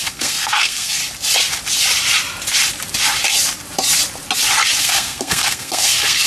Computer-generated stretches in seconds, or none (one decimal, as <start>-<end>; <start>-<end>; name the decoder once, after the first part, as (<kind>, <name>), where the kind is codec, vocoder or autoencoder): 0.0-1.0 (codec, SNAC); 4.8-6.3